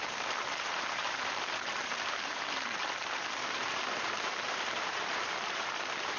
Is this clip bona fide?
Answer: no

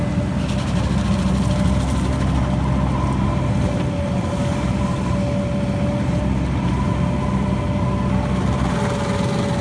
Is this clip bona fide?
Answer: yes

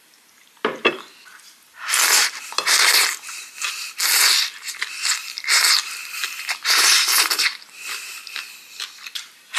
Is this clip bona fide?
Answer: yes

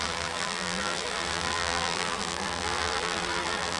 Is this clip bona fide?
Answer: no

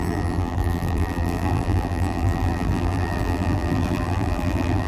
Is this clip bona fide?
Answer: no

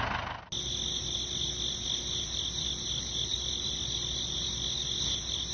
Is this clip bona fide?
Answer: yes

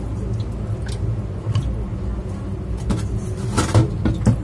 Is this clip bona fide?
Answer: yes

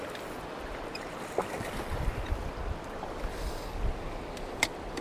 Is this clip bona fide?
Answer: yes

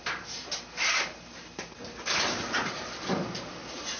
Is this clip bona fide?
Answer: no